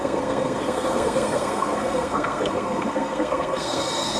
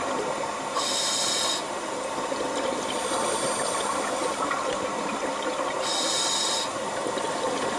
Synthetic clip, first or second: first